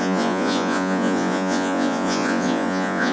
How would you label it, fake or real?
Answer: fake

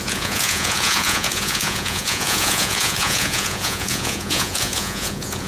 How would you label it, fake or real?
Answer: fake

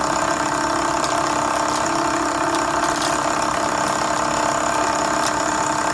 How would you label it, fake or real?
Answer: real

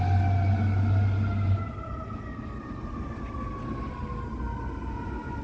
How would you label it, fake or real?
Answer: real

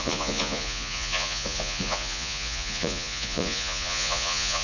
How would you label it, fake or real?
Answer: fake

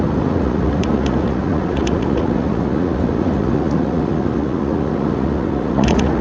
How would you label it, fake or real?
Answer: fake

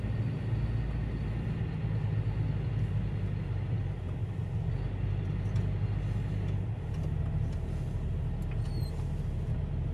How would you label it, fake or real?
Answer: real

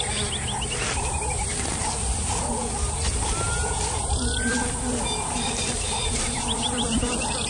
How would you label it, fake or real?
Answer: real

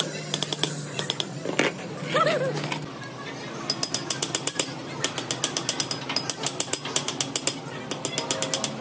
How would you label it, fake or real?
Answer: real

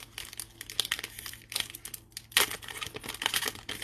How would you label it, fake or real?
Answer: real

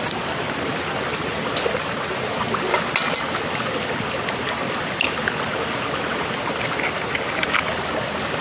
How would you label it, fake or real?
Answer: real